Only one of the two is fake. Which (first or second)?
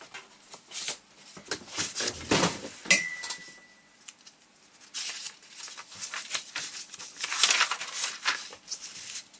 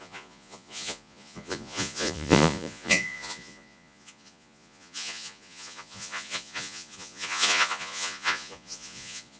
second